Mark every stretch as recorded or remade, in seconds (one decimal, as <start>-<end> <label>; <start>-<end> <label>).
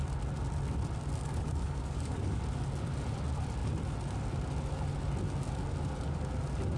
0.0-1.2 recorded; 1.2-2.4 remade; 2.4-6.8 recorded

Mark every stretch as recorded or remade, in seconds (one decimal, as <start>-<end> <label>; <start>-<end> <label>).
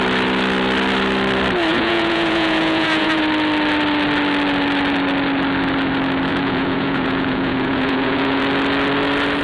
0.0-1.7 recorded; 1.7-3.2 remade; 3.2-6.3 recorded; 6.3-8.4 remade; 8.4-9.4 recorded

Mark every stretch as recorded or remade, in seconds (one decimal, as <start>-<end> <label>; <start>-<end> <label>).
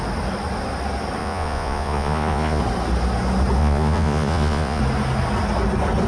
0.0-1.2 recorded; 1.2-2.6 remade; 2.6-3.6 recorded; 3.6-4.8 remade; 4.8-6.1 recorded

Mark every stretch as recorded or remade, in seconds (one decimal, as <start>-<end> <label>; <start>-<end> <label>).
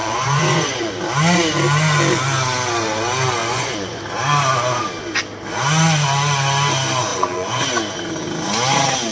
0.0-0.9 remade; 0.9-3.4 recorded; 3.4-4.0 remade; 4.0-7.1 recorded; 7.1-7.6 remade; 7.6-9.1 recorded